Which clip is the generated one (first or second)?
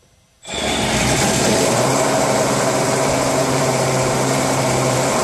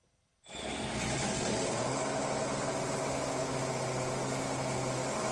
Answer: first